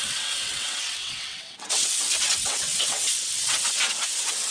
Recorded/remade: remade